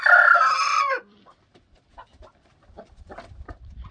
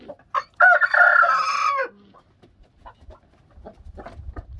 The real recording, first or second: second